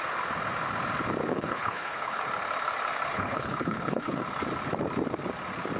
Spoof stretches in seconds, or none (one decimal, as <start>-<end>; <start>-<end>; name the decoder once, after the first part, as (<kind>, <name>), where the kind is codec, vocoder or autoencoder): 1.3-2.2 (codec, HILCodec); 3.1-4.2